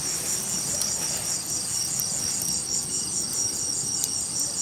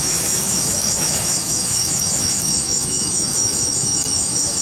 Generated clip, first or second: second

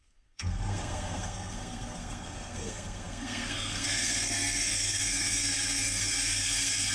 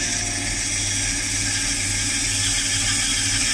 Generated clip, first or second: first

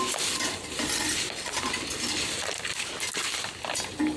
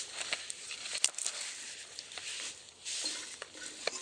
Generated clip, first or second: second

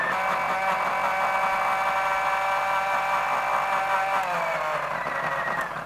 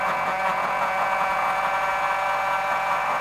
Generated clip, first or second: second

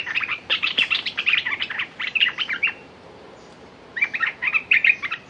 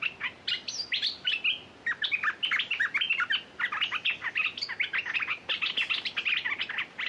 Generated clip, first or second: first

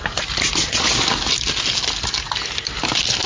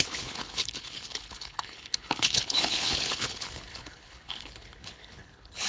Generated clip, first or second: second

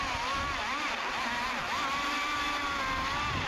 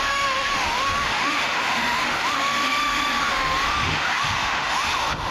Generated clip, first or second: second